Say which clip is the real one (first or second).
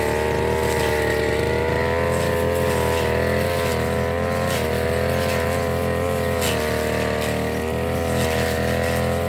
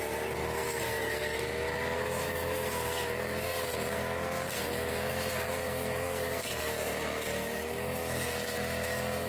first